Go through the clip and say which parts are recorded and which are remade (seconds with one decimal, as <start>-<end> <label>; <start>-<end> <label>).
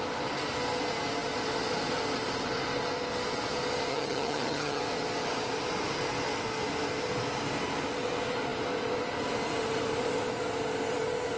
0.0-3.9 recorded; 3.9-4.8 remade; 4.8-11.4 recorded